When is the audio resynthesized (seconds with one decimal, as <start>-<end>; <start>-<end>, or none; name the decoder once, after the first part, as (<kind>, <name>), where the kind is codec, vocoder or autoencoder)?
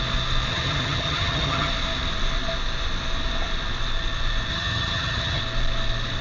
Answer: 0.5-1.7 (vocoder, HiFi-GAN); 4.5-5.4